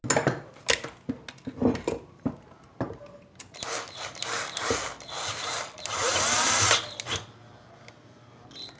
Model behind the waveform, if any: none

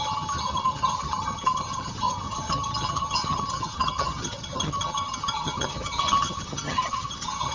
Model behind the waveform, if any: vocoder, HiFi-GAN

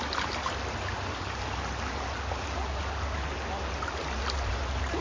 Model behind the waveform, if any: none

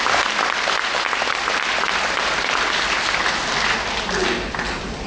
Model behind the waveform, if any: none